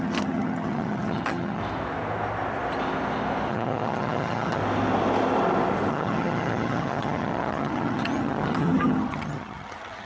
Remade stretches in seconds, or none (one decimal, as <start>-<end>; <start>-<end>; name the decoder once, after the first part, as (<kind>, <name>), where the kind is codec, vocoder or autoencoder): 0.0-1.6 (vocoder, HiFi-GAN); 3.5-4.6; 5.9-10.1